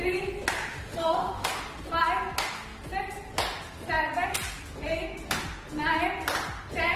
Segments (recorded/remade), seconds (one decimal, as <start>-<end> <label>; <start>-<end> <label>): 0.0-0.7 recorded; 0.7-1.5 remade; 1.5-7.0 recorded